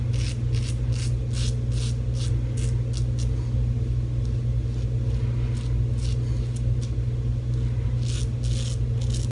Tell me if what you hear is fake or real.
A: real